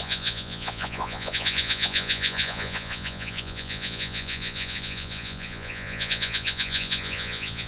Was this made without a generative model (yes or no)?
no